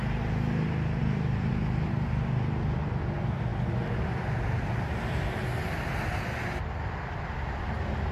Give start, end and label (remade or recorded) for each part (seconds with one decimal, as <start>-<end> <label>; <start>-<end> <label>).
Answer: 0.0-8.1 recorded